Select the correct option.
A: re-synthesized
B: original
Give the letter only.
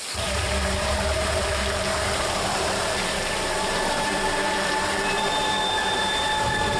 A